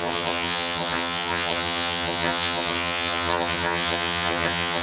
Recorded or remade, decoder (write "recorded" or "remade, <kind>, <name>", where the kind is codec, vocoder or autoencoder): remade, vocoder, HiFi-GAN